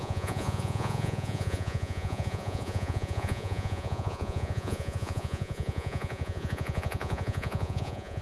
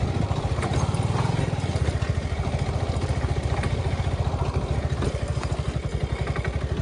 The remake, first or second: first